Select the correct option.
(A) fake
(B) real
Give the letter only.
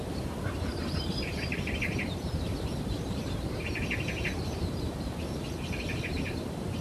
A